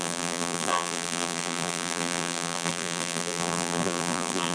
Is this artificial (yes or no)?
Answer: yes